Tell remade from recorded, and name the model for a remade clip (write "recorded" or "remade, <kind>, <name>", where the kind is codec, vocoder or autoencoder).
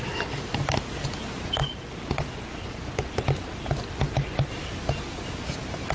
recorded